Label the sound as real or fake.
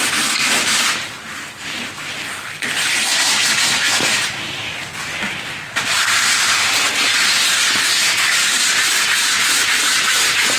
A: real